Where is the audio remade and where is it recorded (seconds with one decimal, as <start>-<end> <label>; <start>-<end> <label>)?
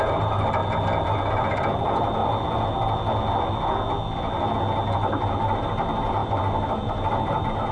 0.0-0.6 remade; 0.6-1.3 recorded; 1.3-2.2 remade; 2.2-5.4 recorded; 5.4-7.7 remade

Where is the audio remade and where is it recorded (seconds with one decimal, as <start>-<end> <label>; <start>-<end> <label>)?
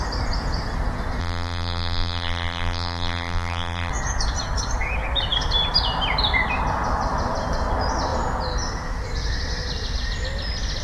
0.0-1.2 recorded; 1.2-3.9 remade; 3.9-10.8 recorded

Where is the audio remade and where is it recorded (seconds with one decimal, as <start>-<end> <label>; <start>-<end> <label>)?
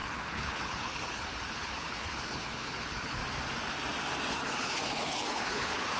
0.0-3.2 remade; 3.2-4.3 recorded; 4.3-6.0 remade